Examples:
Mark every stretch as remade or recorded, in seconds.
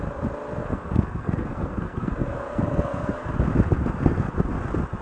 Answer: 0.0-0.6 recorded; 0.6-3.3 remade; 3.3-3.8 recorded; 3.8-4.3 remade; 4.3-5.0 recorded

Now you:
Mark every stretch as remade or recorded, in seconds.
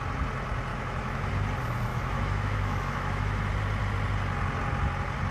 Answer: 0.0-0.7 recorded; 0.7-1.3 remade; 1.3-1.9 recorded; 1.9-3.5 remade; 3.5-5.3 recorded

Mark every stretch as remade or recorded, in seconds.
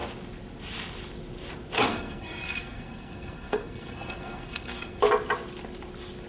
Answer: 0.0-1.9 recorded; 1.9-5.0 remade; 5.0-6.3 recorded